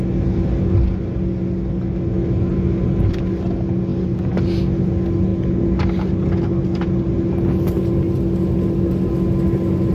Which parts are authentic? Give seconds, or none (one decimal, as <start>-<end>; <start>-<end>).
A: 0.0-3.9; 4.4-9.9